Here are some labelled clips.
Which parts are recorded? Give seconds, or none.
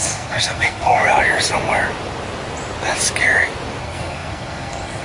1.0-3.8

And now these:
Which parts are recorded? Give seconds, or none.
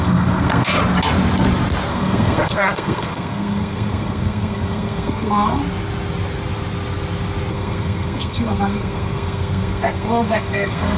0.7-1.9; 5.6-7.5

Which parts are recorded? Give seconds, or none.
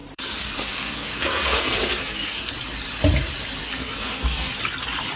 2.5-3.6; 4.5-5.2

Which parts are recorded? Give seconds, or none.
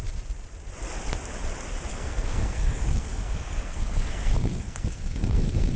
0.0-1.9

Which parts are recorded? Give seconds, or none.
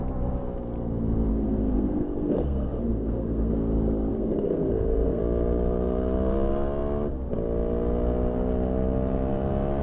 0.0-1.3; 3.5-4.1; 5.2-9.8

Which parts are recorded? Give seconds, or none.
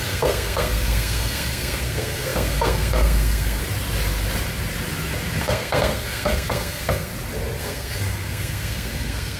3.6-5.4; 7.1-7.6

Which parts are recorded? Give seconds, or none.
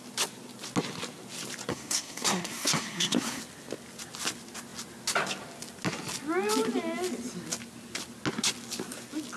0.0-1.7; 3.4-9.4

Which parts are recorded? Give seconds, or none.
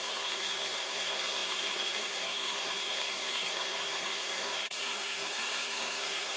none